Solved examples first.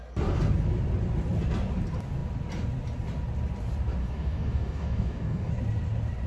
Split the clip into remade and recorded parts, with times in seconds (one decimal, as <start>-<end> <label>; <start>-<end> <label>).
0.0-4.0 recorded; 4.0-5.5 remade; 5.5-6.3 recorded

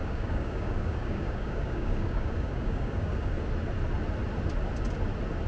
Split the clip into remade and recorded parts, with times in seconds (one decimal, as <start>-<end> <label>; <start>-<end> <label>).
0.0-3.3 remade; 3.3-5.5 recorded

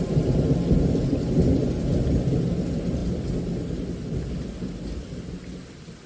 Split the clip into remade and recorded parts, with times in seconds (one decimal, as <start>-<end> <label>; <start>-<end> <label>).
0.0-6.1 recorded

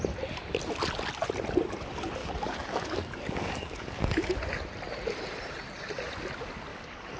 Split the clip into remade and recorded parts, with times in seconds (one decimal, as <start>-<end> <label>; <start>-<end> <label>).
0.0-2.2 recorded; 2.2-4.3 remade; 4.3-6.7 recorded; 6.7-7.2 remade

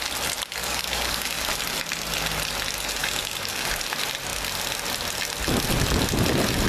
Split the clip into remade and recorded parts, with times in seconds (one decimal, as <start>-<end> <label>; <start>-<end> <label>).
0.0-0.6 recorded; 0.6-1.5 remade; 1.5-3.0 recorded; 3.0-3.7 remade; 3.7-6.7 recorded

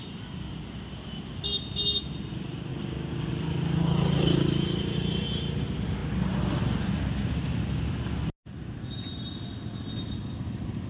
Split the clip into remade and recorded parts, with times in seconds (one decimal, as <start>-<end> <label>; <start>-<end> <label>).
0.0-2.7 recorded; 2.7-3.3 remade; 3.3-10.9 recorded

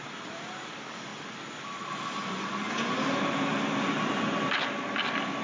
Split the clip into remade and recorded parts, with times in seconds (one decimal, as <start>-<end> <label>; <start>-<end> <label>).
0.0-5.4 recorded

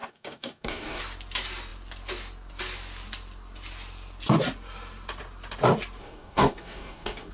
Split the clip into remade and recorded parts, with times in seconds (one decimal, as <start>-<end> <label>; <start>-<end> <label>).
0.0-1.0 remade; 1.0-6.0 recorded; 6.0-7.3 remade